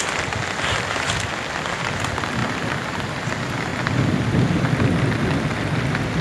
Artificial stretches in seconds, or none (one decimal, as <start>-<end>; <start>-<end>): none